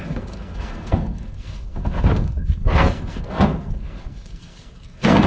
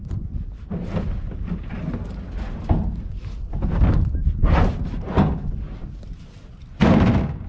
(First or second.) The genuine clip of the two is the second